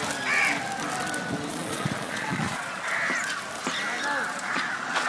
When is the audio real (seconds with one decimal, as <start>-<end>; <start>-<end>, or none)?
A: 0.0-1.5; 2.9-4.3